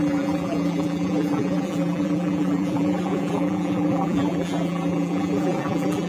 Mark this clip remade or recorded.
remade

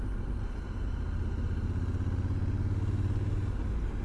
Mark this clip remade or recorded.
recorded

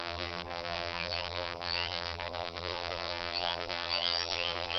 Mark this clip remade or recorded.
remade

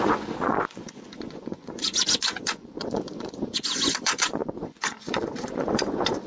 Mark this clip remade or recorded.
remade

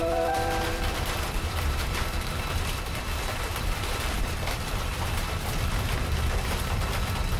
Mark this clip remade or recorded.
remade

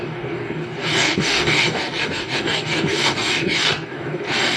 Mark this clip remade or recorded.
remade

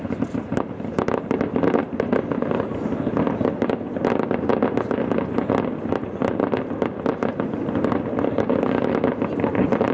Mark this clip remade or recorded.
recorded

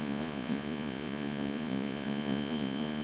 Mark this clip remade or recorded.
remade